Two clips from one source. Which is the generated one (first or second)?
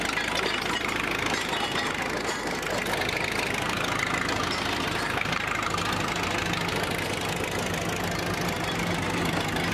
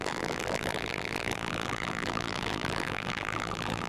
second